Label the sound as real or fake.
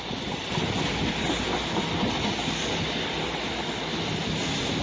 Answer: real